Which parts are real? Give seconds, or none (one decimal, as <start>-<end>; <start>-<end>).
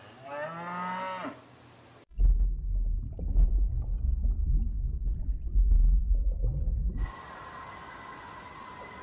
0.0-9.0